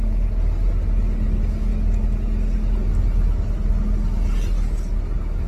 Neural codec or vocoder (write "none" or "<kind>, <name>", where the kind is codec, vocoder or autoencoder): none